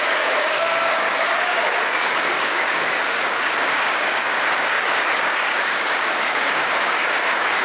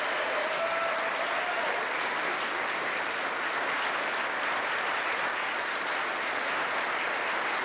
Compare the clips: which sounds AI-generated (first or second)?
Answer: first